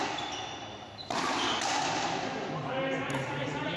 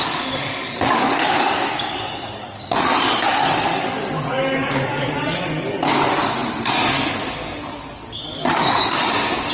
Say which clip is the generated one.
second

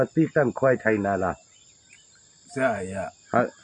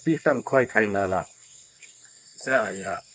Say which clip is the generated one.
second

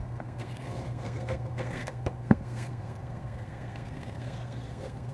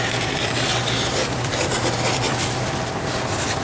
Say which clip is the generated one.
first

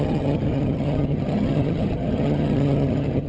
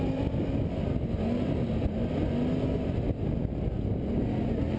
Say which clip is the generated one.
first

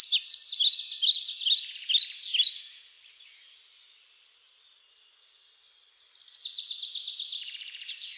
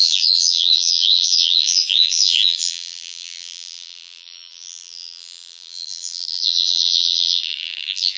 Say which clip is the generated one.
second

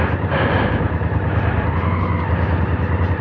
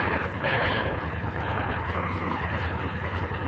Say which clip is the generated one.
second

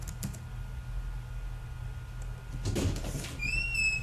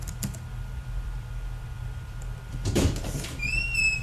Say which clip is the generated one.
second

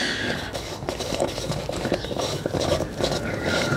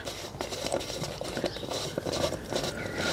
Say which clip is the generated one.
first